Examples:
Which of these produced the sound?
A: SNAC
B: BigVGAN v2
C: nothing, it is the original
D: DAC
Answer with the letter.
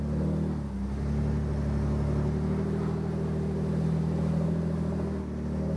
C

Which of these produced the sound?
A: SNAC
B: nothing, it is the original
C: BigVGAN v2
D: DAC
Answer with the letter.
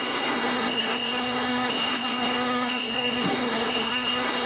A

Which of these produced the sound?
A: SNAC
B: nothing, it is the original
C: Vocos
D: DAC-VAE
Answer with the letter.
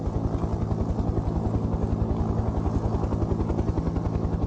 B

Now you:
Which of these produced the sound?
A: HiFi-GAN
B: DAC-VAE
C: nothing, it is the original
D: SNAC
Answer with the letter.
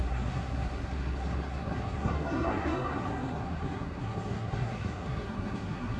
D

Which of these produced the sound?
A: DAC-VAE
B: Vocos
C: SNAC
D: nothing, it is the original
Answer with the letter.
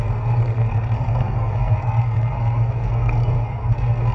C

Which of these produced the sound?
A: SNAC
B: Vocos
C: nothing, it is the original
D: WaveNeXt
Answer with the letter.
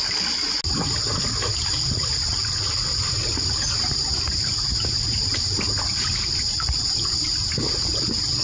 C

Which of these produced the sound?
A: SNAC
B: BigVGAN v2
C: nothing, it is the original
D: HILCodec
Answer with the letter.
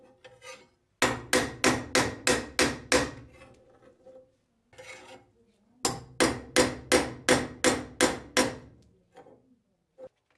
C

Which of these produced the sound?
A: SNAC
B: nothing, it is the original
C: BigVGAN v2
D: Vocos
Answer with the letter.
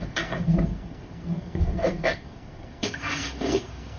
A